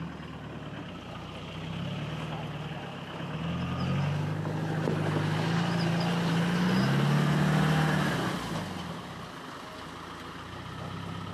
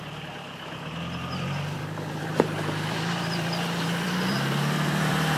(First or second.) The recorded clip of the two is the first